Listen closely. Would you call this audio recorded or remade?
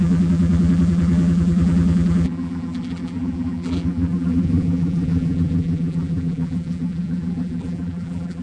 remade